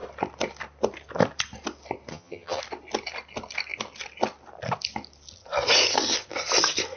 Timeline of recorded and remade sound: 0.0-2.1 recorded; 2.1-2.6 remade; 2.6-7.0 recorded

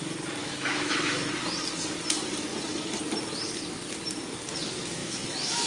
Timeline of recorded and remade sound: 0.0-0.4 recorded; 0.4-1.3 remade; 1.3-5.0 recorded; 5.0-5.7 remade

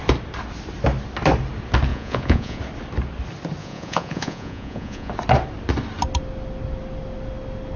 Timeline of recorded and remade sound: 0.0-1.9 recorded; 1.9-2.6 remade; 2.6-3.6 recorded; 3.6-5.1 remade; 5.1-7.8 recorded

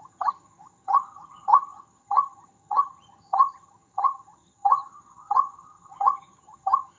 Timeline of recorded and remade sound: 0.0-7.0 remade